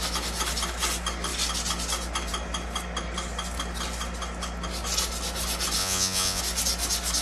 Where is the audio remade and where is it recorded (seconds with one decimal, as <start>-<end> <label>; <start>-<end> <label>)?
0.0-5.8 recorded; 5.8-6.4 remade; 6.4-7.2 recorded